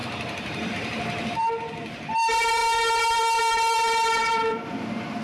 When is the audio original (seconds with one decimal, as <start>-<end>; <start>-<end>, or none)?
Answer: none